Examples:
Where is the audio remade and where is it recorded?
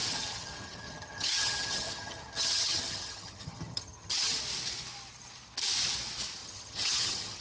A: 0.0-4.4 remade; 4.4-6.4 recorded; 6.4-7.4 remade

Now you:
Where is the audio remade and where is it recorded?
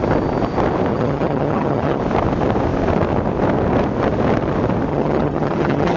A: 0.0-0.9 recorded; 0.9-2.0 remade; 2.0-4.9 recorded; 4.9-6.0 remade